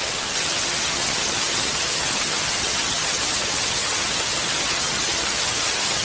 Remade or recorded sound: remade